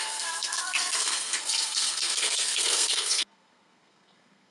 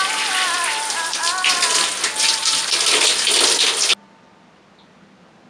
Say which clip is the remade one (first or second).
first